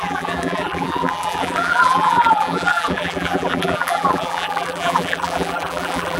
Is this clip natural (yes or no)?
no